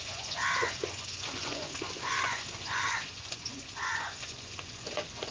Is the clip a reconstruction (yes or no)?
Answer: yes